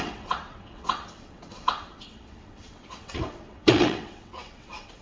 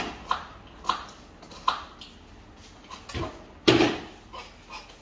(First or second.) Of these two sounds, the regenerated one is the first